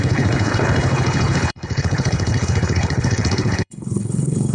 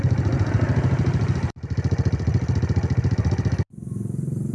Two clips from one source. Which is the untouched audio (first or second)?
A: second